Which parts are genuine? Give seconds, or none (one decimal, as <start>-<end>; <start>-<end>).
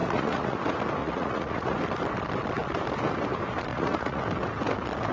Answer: 0.6-1.0; 1.8-3.7; 4.2-5.1